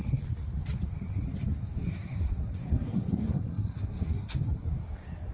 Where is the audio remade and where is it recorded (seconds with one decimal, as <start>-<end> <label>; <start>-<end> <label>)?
0.0-1.5 recorded; 1.5-4.7 remade; 4.7-5.3 recorded